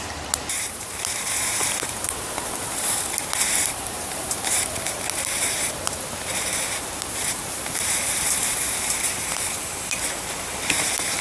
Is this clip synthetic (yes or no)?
yes